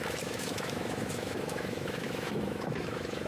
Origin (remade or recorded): remade